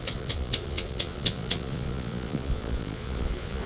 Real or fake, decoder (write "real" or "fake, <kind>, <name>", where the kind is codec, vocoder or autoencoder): fake, vocoder, Vocos